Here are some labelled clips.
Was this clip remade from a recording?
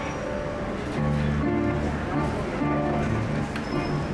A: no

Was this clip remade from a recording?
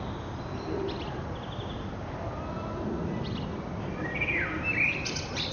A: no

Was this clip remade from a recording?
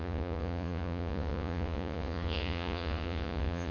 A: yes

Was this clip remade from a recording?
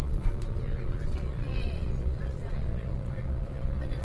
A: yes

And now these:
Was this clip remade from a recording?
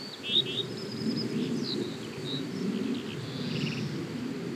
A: no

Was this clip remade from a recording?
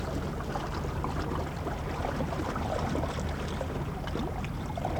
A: no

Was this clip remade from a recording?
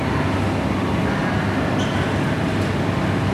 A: no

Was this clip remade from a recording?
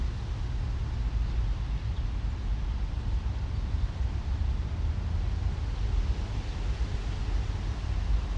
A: no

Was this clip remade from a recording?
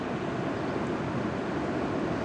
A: no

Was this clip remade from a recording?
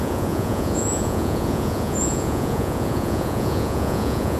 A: yes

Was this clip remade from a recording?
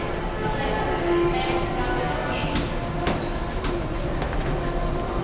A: no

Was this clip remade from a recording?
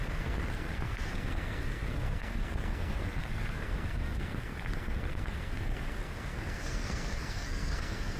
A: yes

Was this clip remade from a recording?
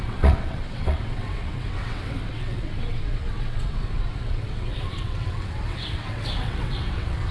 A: yes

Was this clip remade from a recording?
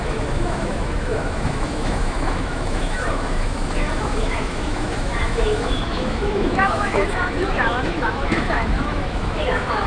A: yes